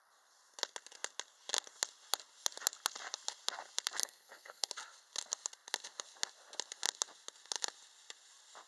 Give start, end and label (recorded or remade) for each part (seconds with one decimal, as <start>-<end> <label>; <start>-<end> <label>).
0.0-4.0 recorded; 4.0-4.7 remade; 4.7-8.7 recorded